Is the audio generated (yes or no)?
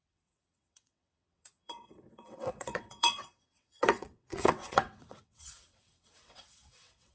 yes